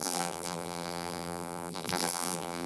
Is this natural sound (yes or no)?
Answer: no